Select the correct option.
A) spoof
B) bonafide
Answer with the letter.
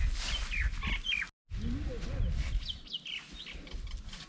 B